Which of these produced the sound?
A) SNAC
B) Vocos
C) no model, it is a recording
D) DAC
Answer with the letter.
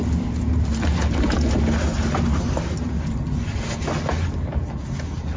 C